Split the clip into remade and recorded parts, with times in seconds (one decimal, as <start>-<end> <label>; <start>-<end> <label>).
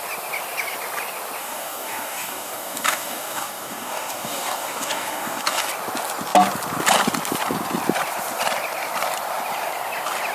0.0-1.4 recorded; 1.4-5.7 remade; 5.7-10.3 recorded